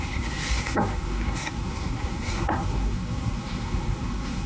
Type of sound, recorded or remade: remade